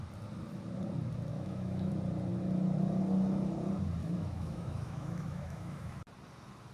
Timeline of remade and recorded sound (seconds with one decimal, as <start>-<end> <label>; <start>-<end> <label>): 0.0-1.3 recorded; 1.3-1.9 remade; 1.9-4.0 recorded; 4.0-6.0 remade; 6.0-6.7 recorded